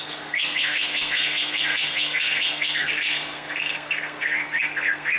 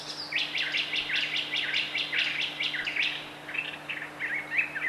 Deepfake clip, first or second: first